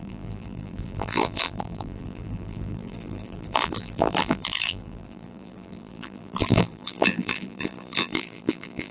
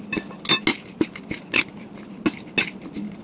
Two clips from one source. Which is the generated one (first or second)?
first